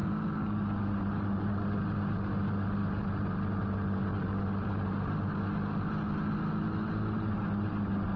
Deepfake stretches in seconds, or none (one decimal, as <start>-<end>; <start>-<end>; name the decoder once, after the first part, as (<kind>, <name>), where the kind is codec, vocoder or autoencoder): none